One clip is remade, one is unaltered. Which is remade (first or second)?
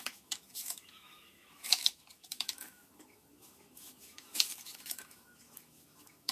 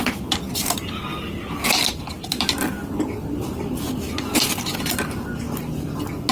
first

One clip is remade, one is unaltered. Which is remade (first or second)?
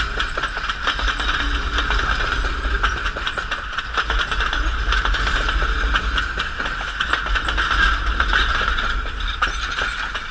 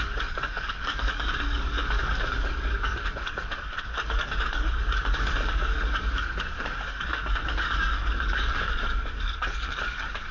second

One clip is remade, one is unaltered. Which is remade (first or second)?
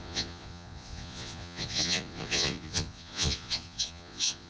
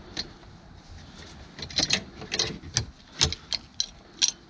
first